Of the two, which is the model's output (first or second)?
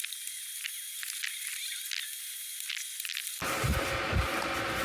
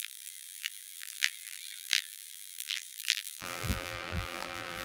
second